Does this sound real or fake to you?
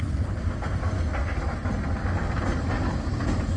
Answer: real